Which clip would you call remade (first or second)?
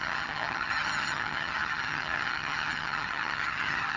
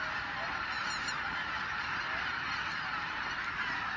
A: first